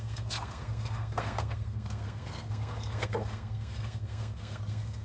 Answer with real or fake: fake